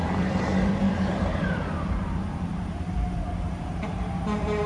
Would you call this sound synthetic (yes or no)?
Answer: yes